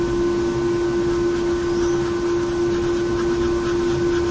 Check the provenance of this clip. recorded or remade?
recorded